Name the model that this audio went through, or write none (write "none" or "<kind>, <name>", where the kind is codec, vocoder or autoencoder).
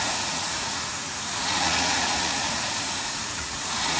vocoder, Vocos